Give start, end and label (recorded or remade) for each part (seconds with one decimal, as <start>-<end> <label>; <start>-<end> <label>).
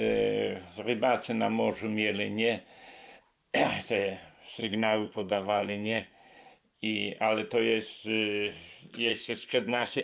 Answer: 0.0-4.6 recorded; 4.6-6.4 remade; 6.4-9.1 recorded; 9.1-10.0 remade